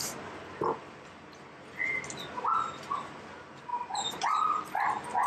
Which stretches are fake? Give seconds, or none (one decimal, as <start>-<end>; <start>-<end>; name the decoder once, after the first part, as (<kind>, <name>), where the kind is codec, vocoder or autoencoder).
3.7-4.4 (vocoder, BigVGAN v2)